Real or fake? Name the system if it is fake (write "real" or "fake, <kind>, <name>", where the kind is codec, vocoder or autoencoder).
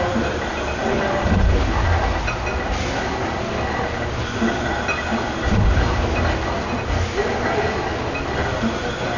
real